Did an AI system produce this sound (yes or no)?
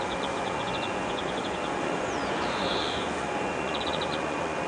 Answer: yes